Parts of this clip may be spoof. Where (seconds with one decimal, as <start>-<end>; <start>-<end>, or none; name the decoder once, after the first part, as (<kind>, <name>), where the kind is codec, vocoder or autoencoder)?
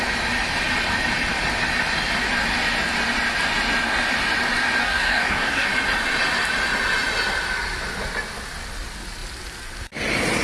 4.8-5.7 (codec, DAC)